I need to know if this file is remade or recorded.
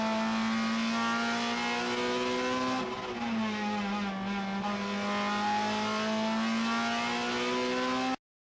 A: recorded